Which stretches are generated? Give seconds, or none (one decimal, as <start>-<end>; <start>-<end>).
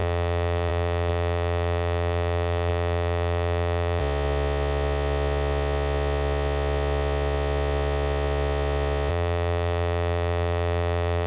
0.0-4.0; 9.1-11.3